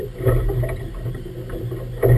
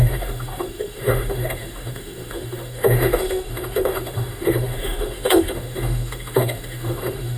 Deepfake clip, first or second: second